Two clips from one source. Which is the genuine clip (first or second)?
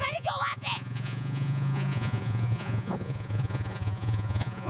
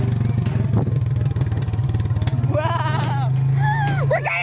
second